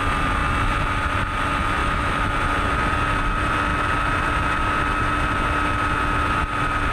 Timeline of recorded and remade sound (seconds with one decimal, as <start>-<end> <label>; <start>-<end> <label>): 0.0-1.8 recorded; 1.8-2.3 remade; 2.3-6.9 recorded